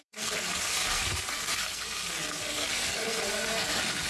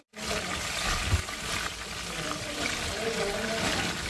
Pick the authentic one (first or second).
second